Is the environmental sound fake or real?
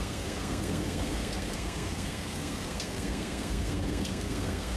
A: fake